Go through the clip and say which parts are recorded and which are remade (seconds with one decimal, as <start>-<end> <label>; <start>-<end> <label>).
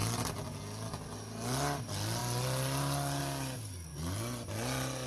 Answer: 0.0-5.1 recorded